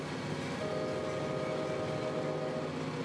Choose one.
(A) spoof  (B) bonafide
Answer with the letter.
B